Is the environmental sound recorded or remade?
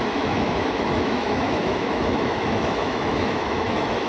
remade